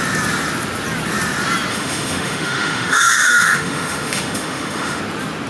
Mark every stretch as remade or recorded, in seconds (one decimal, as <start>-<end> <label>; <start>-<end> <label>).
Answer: 0.0-1.7 recorded; 1.7-5.0 remade; 5.0-5.5 recorded